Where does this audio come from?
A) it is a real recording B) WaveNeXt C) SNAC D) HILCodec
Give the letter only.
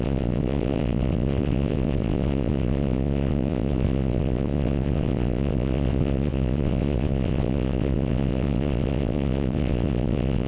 B